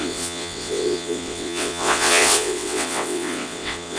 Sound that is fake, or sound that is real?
fake